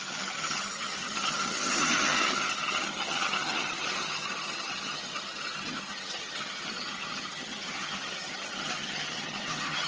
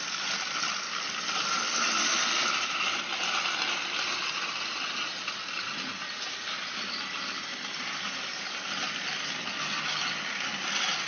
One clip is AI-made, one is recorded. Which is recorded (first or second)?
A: second